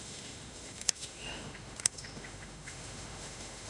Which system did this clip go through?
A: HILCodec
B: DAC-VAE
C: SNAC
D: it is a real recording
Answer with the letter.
B